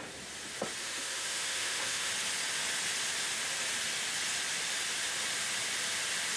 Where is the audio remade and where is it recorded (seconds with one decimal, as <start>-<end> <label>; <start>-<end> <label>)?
0.0-0.8 recorded; 0.8-2.1 remade; 2.1-6.4 recorded